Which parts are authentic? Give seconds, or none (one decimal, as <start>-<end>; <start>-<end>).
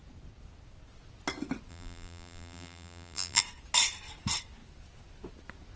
0.0-1.7; 3.4-5.8